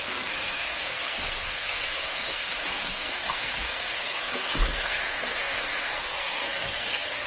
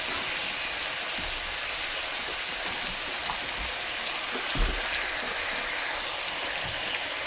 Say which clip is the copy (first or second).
first